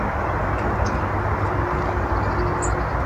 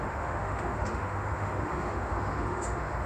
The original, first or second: first